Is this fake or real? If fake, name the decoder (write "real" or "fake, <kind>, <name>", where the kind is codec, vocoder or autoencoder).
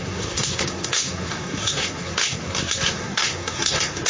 fake, codec, SNAC